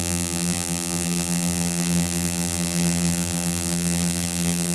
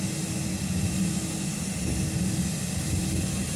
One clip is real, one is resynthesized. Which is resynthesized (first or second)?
first